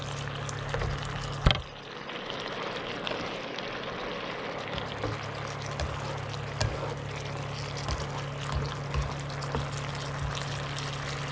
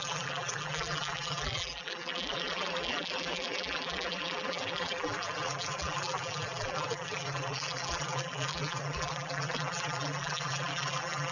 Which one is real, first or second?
first